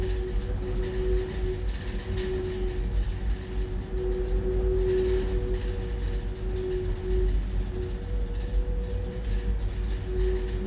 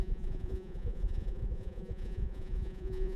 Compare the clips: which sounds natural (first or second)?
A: first